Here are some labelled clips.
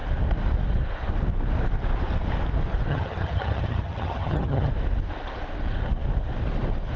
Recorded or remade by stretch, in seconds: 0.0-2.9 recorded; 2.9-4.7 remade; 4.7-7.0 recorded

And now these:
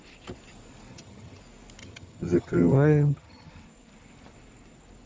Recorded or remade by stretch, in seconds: 0.0-0.9 recorded; 0.9-1.4 remade; 1.4-1.8 recorded; 1.8-3.5 remade; 3.5-5.1 recorded

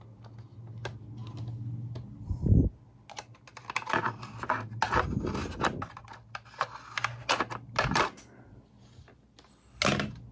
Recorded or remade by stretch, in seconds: 0.0-10.3 recorded

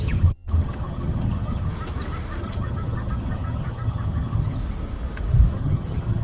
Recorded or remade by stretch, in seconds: 0.0-1.7 remade; 1.7-2.4 recorded; 2.4-4.6 remade; 4.6-5.5 recorded; 5.5-6.2 remade

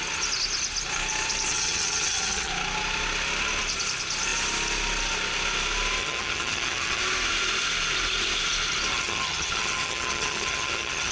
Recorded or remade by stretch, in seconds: 0.0-1.5 recorded; 1.5-2.5 remade; 2.5-6.0 recorded; 6.0-7.0 remade; 7.0-8.9 recorded; 8.9-11.1 remade

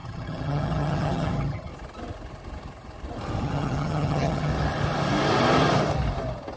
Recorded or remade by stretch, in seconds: 0.0-1.7 remade; 1.7-3.4 recorded; 3.4-4.5 remade; 4.5-6.6 recorded

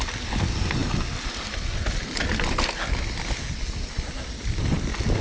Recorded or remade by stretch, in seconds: 0.0-5.2 recorded